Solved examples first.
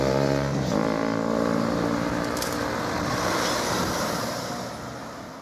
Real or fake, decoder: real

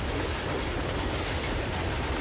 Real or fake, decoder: real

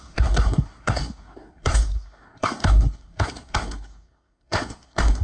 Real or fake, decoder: fake, codec, SNAC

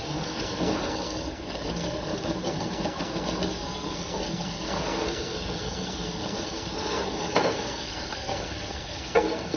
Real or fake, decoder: fake, codec, SNAC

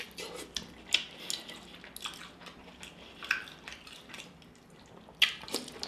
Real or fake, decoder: real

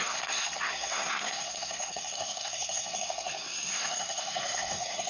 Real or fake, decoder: fake, codec, SNAC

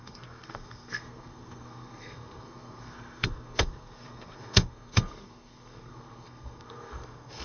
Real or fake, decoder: fake, codec, SNAC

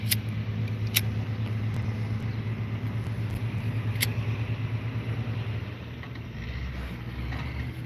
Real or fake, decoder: real